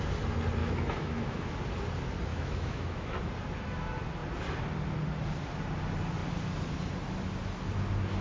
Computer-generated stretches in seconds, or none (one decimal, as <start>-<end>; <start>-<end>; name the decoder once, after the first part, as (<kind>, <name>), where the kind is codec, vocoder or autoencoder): 0.6-1.6 (autoencoder, DAC-VAE); 2.3-3.2